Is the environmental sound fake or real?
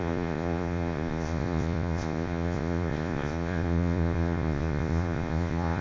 fake